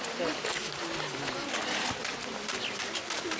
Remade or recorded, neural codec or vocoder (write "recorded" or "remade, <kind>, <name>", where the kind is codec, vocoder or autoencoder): recorded